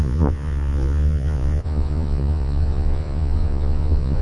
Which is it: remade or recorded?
remade